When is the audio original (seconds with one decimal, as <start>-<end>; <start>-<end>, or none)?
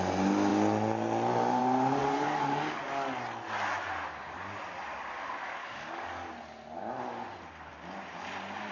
0.0-2.0; 2.8-5.6; 6.3-8.7